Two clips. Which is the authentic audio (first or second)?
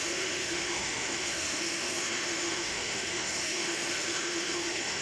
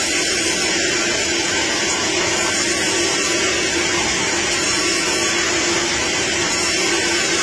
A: second